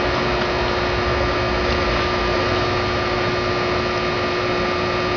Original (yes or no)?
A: yes